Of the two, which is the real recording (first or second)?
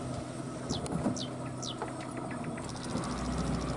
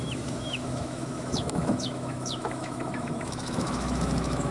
first